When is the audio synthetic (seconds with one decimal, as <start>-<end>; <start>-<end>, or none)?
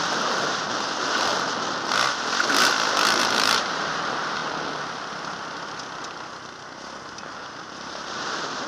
0.0-1.3; 3.2-4.4; 7.4-8.7